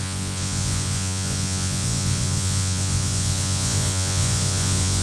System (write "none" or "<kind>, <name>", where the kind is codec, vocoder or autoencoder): vocoder, Vocos